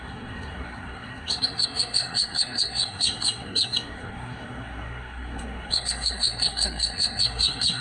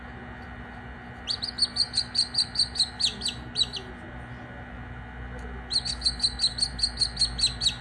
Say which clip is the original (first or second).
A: second